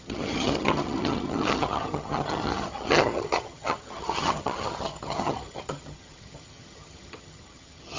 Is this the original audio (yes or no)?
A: no